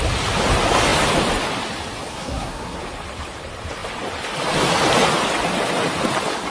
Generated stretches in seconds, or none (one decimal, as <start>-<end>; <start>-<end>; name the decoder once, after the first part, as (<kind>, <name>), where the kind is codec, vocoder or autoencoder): 2.1-2.8 (codec, SNAC)